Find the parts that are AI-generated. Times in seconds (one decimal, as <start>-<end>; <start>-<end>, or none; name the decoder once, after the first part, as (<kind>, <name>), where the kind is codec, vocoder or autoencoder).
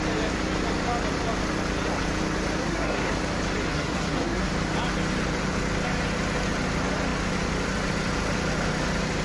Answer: 2.6-3.1 (codec, SNAC); 3.7-4.5